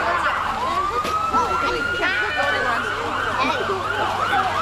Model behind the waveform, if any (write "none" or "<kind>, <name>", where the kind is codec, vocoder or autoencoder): none